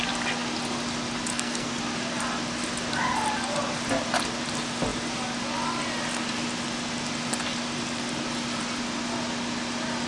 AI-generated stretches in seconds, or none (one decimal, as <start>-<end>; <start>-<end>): 1.3-1.8